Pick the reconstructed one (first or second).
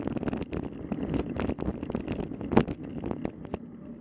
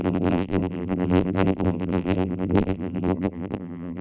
second